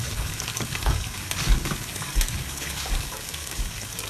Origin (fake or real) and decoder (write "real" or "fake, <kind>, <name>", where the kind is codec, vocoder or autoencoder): fake, codec, DAC